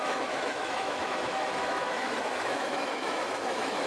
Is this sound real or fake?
fake